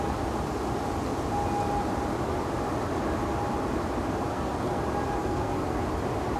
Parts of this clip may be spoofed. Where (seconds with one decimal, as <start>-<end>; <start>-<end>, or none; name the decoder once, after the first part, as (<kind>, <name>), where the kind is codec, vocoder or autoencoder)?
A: 4.3-4.8 (codec, SNAC); 5.2-5.8